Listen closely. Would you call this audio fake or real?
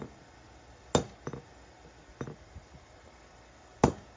real